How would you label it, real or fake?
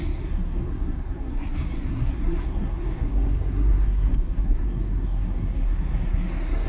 fake